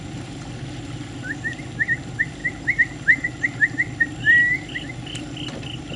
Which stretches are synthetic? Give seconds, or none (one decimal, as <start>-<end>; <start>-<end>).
none